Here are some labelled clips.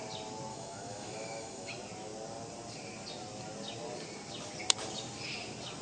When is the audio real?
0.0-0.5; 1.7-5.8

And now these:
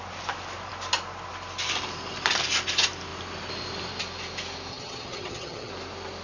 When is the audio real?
0.0-4.7; 5.7-6.2